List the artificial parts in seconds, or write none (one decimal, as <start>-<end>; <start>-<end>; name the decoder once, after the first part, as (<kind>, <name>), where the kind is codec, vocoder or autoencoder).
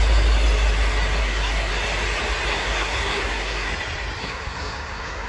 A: 1.2-1.7 (codec, SNAC); 2.5-3.7; 4.2-5.3